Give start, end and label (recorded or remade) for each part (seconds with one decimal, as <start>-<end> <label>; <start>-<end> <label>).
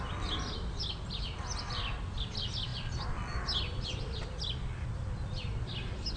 0.0-6.2 recorded